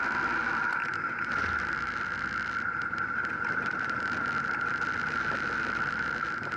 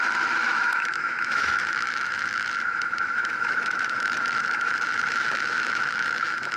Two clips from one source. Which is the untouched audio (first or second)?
first